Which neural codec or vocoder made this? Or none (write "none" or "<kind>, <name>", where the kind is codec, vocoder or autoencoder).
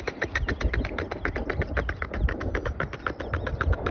none